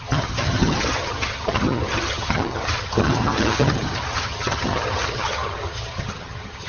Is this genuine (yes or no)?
no